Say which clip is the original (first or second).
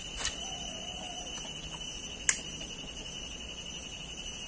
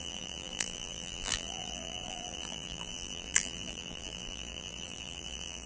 first